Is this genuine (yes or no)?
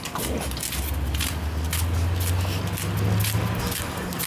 yes